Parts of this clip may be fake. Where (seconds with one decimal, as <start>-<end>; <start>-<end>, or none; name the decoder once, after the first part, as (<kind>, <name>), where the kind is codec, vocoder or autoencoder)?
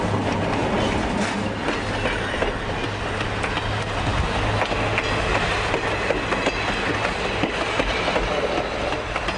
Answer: none